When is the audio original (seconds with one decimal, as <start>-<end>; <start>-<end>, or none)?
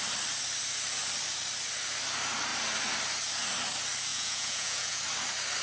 0.0-4.1; 5.0-5.6